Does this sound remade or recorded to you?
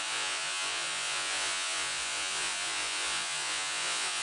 remade